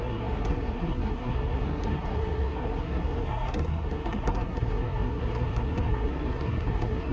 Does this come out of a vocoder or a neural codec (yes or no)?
yes